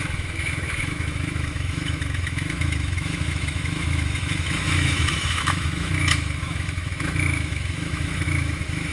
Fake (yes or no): yes